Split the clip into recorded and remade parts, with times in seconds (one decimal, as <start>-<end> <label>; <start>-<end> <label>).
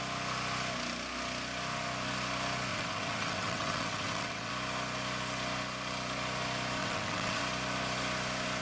0.0-2.7 recorded; 2.7-4.5 remade; 4.5-6.8 recorded; 6.8-7.4 remade; 7.4-8.6 recorded